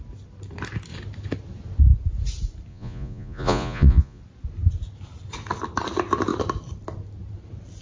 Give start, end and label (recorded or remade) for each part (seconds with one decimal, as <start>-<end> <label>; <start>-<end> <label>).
0.0-2.7 recorded; 2.7-4.2 remade; 4.2-7.8 recorded